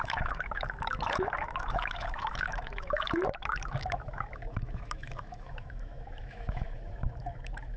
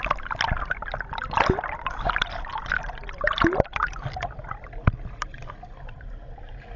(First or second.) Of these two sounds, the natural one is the second